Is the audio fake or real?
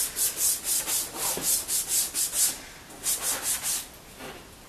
real